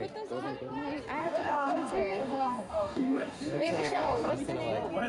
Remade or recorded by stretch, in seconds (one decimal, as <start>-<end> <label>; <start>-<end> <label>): 0.0-1.2 recorded; 1.2-4.3 remade; 4.3-5.1 recorded